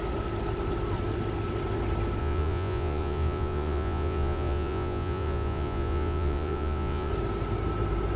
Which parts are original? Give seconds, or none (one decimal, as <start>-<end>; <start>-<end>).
0.0-2.2; 7.1-8.2